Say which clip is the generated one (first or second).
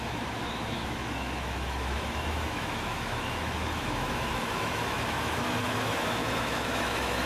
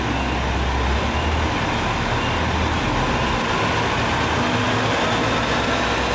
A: first